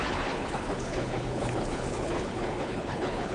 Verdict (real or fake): fake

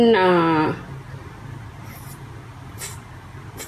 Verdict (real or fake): real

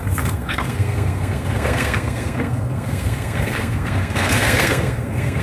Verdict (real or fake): fake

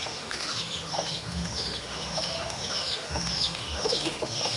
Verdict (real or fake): fake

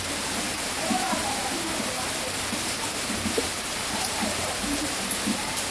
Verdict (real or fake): fake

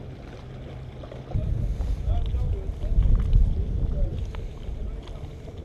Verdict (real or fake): real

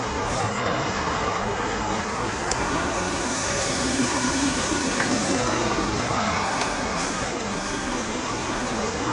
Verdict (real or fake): fake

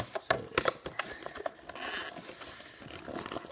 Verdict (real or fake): real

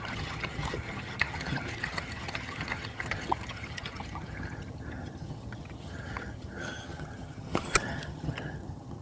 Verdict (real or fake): fake